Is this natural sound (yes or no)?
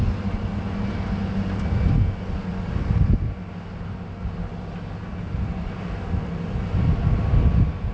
yes